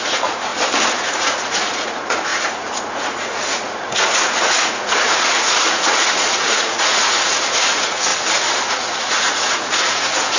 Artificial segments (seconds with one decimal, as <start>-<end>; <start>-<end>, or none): 0.0-0.5; 1.0-8.1; 8.7-10.4